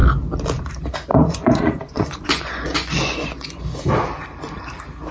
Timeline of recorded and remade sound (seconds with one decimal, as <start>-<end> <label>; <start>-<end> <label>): 0.0-1.1 recorded; 1.1-3.6 remade; 3.6-5.1 recorded

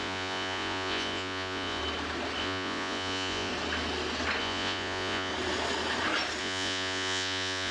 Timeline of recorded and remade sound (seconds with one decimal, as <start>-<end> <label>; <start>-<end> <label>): 0.0-1.8 remade; 1.8-2.4 recorded; 2.4-3.5 remade; 3.5-4.4 recorded; 4.4-5.3 remade; 5.3-6.4 recorded; 6.4-7.7 remade

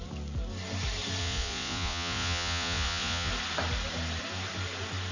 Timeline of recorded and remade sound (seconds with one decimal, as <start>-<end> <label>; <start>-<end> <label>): 0.0-1.2 recorded; 1.2-3.3 remade; 3.3-5.1 recorded

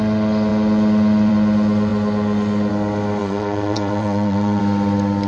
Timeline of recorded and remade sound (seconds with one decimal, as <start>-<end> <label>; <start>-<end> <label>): 0.0-3.2 recorded; 3.2-4.6 remade; 4.6-5.3 recorded

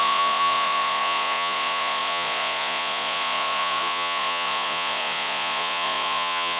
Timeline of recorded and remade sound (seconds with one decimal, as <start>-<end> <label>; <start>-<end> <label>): 0.0-6.6 remade